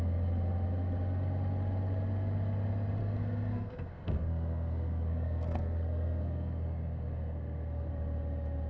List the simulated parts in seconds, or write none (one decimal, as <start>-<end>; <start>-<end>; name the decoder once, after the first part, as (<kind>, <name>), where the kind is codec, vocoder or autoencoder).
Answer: 3.0-7.9 (codec, SNAC)